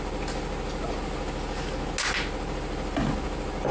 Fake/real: real